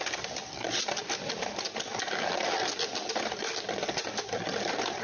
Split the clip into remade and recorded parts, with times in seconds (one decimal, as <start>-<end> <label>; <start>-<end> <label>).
0.0-5.0 recorded